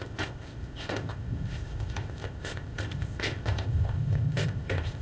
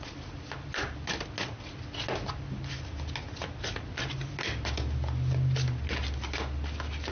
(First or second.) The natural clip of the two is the second